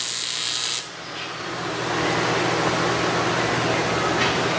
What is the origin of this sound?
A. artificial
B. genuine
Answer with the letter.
B